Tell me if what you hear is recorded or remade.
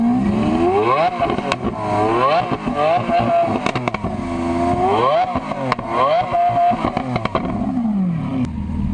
recorded